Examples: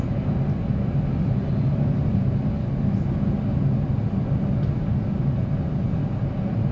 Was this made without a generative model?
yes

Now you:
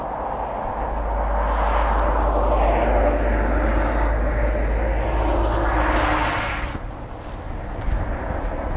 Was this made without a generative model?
yes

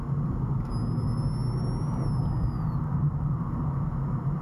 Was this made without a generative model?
yes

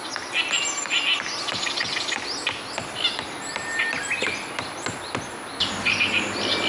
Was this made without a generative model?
yes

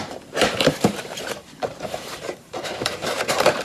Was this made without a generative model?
no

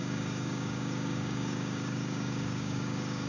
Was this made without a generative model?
no